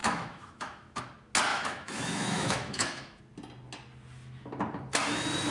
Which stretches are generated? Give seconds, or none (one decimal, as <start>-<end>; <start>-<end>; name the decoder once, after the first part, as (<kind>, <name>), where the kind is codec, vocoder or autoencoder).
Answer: 0.0-1.0 (autoencoder, DAC-VAE); 1.5-3.2